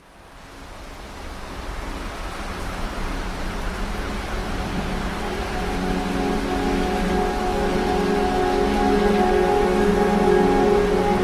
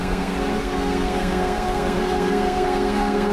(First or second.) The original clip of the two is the first